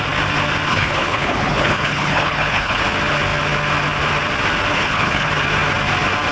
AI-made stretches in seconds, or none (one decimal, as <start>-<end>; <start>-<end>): 0.7-2.8; 4.7-5.3